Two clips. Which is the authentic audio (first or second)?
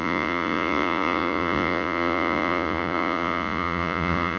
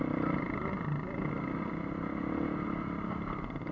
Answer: second